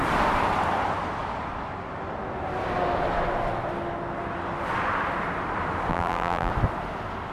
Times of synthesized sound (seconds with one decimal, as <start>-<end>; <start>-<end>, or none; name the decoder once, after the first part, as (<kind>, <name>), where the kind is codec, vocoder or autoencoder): 5.9-6.5 (vocoder, BigVGAN v2)